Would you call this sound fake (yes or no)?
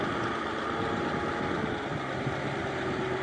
no